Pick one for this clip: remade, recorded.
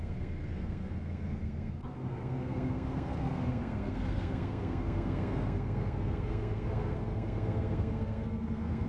remade